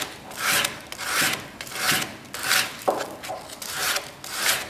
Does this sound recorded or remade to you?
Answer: recorded